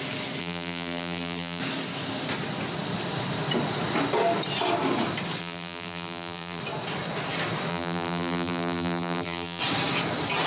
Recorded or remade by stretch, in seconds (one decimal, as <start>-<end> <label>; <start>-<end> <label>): 0.0-0.4 recorded; 0.4-1.6 remade; 1.6-5.4 recorded; 5.4-6.6 remade; 6.6-7.7 recorded; 7.7-9.6 remade; 9.6-10.5 recorded